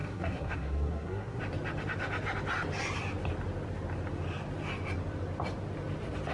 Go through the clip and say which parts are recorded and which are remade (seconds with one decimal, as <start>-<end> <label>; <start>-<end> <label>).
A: 0.0-1.4 remade; 1.4-6.3 recorded